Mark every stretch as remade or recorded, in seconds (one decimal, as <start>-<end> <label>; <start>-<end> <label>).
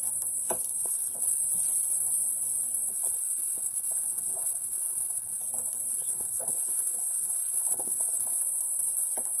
0.0-0.8 recorded; 0.8-1.4 remade; 1.4-2.9 recorded; 2.9-5.4 remade; 5.4-5.9 recorded; 5.9-8.4 remade; 8.4-9.4 recorded